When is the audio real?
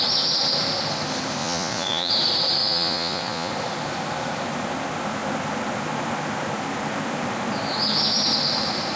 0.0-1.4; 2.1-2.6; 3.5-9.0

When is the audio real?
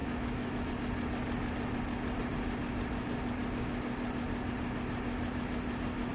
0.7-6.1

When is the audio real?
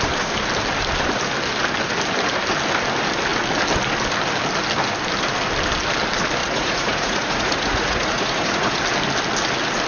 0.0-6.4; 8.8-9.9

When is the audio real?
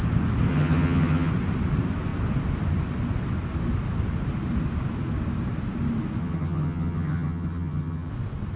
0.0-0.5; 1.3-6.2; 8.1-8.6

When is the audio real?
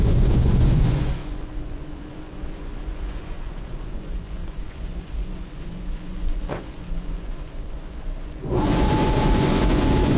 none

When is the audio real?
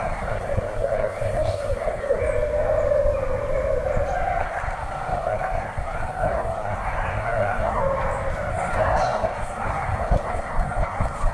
2.2-4.4; 7.8-8.5